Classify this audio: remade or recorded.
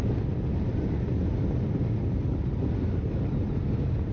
recorded